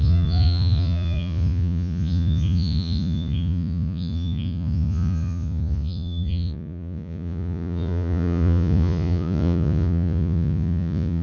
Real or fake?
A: fake